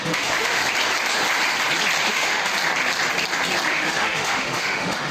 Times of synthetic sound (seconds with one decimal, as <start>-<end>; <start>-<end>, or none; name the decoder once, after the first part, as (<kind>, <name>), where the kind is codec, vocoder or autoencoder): 0.0-0.6 (autoencoder, DAC-VAE); 2.1-2.5; 3.7-5.1